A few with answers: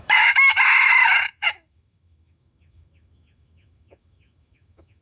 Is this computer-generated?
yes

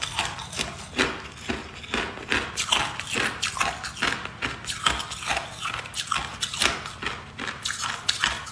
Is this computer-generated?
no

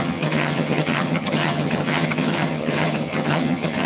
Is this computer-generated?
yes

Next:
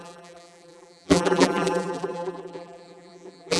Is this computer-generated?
yes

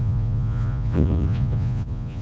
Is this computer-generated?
yes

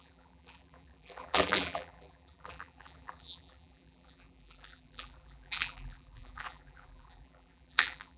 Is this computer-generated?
yes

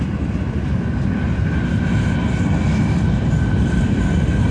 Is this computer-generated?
no